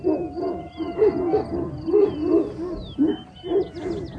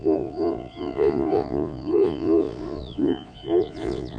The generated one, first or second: second